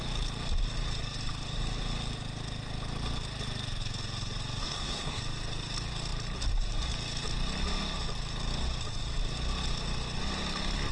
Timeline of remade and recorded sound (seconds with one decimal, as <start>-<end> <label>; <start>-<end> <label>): 0.0-4.6 recorded; 4.6-5.2 remade; 5.2-10.9 recorded